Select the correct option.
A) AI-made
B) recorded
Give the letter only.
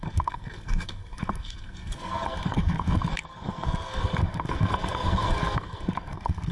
A